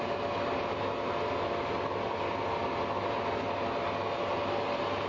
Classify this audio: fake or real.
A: real